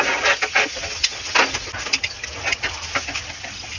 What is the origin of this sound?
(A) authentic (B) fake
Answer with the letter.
A